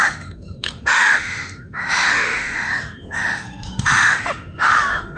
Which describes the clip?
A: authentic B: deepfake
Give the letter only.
B